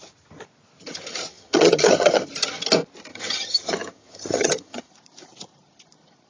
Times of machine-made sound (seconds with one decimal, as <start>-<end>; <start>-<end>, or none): 1.3-2.3; 3.1-4.9